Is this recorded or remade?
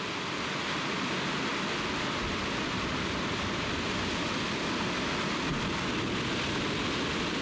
recorded